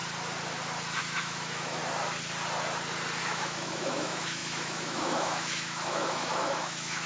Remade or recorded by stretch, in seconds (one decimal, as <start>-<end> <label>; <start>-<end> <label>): 0.0-1.0 recorded; 1.0-1.8 remade; 1.8-3.2 recorded; 3.2-7.1 remade